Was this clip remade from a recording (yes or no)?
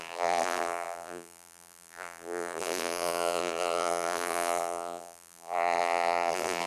yes